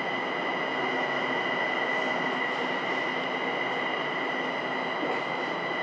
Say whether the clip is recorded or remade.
recorded